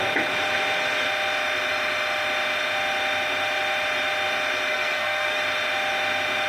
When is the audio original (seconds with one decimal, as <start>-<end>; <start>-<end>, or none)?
0.0-4.7; 5.4-6.5